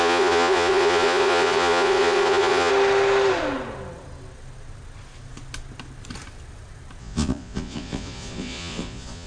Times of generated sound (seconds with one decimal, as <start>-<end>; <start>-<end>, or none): 0.0-2.7; 7.0-9.3

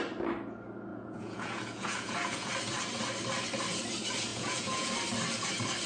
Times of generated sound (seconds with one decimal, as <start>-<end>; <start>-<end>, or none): 0.9-2.5; 4.3-4.9

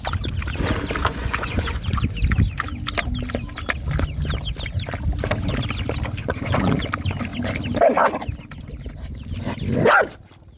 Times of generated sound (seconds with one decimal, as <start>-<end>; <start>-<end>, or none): 1.0-1.8; 6.2-6.8

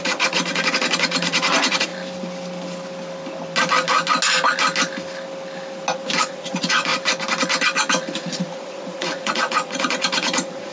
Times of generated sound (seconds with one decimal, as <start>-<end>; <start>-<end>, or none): 0.0-1.9; 6.2-6.9; 8.2-10.7

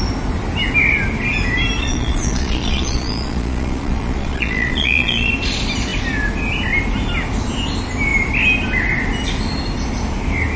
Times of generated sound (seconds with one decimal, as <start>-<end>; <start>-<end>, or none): 1.8-5.3

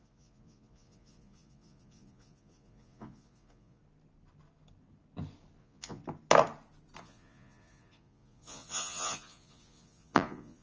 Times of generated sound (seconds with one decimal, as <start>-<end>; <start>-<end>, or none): 0.0-3.8; 5.6-6.0; 7.0-10.6

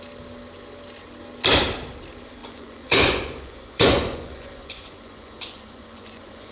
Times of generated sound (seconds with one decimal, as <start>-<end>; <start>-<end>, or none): 2.4-6.5